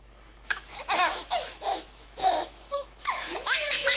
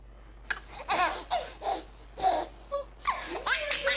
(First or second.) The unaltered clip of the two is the second